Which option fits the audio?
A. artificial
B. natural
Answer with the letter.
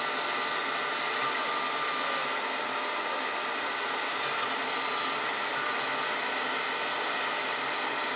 B